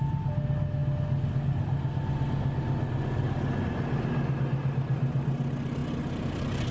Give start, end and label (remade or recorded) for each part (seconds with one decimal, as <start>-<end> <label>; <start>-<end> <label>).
0.0-6.7 recorded